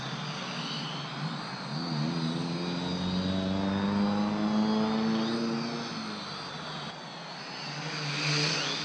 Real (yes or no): yes